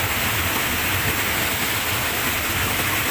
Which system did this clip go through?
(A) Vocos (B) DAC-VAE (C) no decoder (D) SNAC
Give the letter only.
C